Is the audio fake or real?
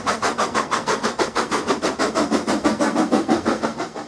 fake